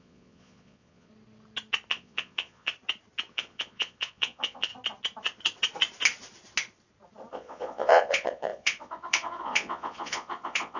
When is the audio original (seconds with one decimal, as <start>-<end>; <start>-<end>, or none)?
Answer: 1.1-1.9; 2.7-3.3; 4.7-7.3